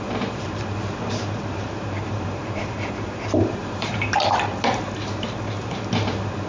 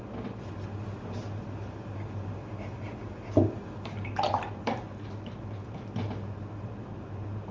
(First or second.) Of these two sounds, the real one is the second